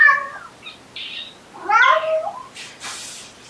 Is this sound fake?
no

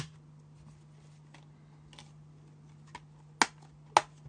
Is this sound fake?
no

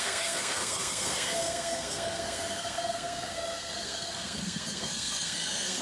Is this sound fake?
yes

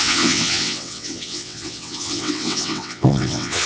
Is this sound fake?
yes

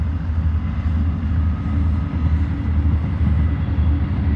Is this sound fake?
no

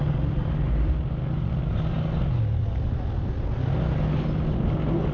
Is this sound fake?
no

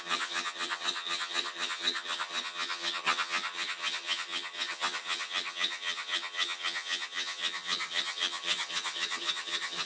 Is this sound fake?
yes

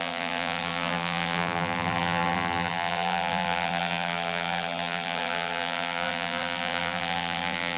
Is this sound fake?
yes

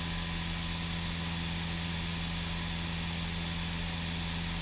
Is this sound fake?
no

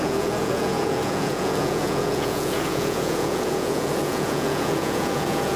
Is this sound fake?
yes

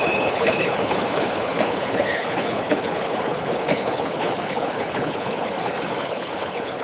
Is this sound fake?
yes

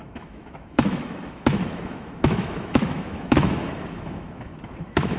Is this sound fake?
yes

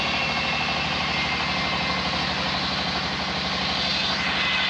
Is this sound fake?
no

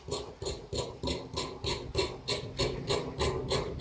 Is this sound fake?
no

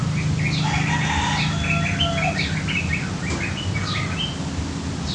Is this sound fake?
no